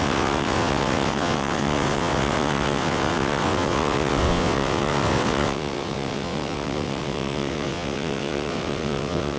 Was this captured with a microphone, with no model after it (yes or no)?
no